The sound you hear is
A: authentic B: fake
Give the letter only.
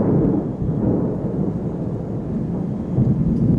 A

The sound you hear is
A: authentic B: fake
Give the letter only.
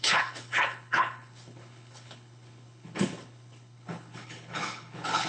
B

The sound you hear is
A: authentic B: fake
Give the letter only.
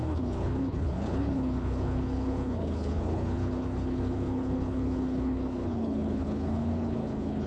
B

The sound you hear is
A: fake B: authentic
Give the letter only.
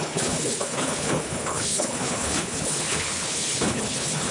A